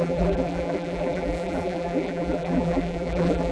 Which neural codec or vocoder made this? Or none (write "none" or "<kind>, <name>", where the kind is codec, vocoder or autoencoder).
vocoder, BigVGAN v2